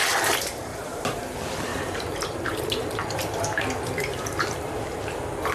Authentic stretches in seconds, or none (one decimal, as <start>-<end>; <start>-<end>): 0.0-0.7; 1.2-1.7; 5.0-5.5